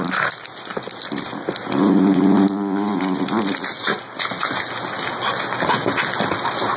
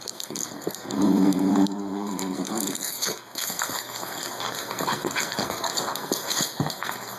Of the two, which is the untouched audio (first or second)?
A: first